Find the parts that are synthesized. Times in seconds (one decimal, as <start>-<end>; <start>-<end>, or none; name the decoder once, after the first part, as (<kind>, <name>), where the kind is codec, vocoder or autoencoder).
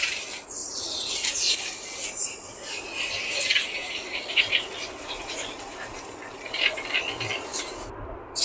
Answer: 0.6-1.5 (vocoder, BigVGAN v2); 3.8-6.2; 7.5-8.4